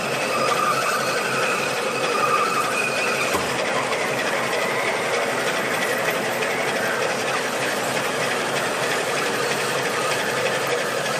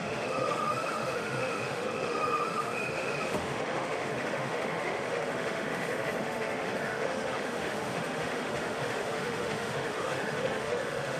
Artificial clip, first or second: second